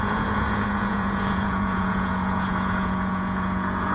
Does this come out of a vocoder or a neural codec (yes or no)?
yes